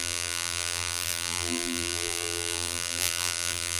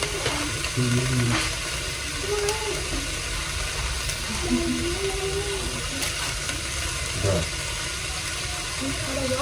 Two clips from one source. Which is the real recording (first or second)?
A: second